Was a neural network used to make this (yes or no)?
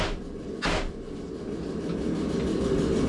no